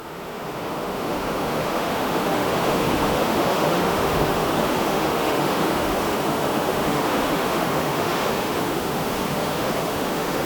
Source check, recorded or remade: remade